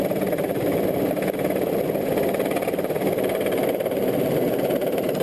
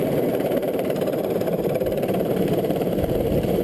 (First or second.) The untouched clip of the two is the first